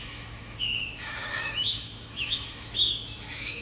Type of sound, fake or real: fake